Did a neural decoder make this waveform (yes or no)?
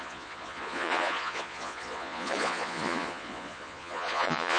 yes